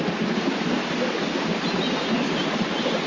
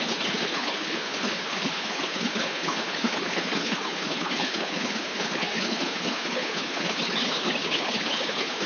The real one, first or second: first